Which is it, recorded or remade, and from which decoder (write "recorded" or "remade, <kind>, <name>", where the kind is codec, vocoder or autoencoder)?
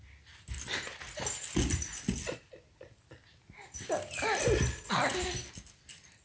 recorded